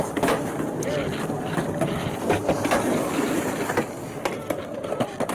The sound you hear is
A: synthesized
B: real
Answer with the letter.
B